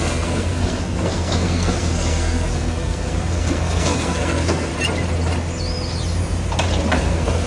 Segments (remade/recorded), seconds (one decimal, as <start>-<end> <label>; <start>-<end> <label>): 0.0-4.7 remade; 4.7-6.9 recorded; 6.9-7.5 remade